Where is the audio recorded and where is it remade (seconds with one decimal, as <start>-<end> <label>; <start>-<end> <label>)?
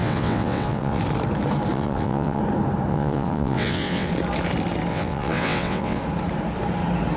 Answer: 0.0-1.0 remade; 1.0-1.7 recorded; 1.7-2.4 remade; 2.4-2.9 recorded; 2.9-4.1 remade; 4.1-4.9 recorded; 4.9-6.0 remade; 6.0-7.2 recorded